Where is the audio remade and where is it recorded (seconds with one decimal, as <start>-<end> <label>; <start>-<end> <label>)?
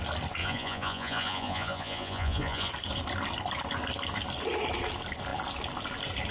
0.0-0.4 recorded; 0.4-2.7 remade; 2.7-6.3 recorded